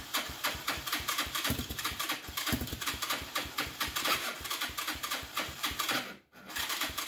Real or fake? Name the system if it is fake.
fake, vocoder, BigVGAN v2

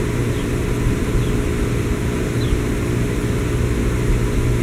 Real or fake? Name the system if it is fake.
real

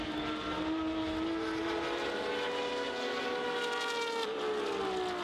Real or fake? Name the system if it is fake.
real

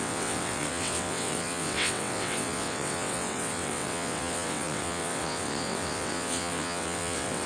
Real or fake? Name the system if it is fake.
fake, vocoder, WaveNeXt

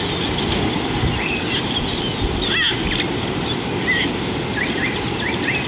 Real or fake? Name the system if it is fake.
real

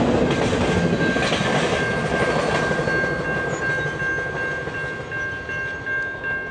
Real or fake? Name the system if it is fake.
real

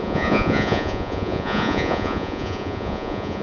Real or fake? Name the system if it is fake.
fake, vocoder, Vocos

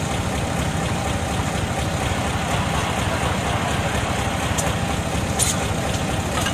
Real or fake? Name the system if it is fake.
real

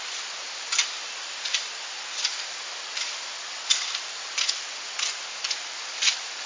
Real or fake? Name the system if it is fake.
real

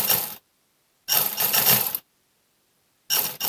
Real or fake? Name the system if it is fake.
real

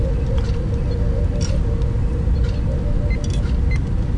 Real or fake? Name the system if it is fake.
real